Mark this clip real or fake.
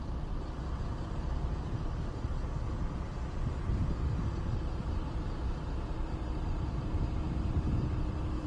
real